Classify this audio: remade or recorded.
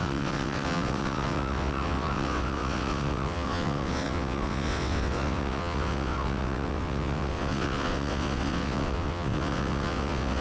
remade